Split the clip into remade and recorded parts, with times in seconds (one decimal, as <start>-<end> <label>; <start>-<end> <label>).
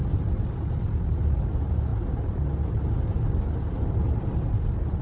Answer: 0.0-5.0 recorded